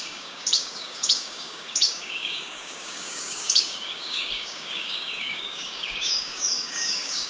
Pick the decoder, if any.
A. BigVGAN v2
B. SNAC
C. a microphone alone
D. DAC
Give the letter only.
D